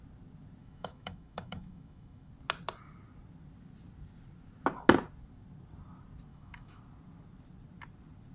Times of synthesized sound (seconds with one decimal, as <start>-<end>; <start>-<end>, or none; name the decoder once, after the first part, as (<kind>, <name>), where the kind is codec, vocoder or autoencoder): 0.6-2.3 (autoencoder, DAC-VAE); 6.3-6.8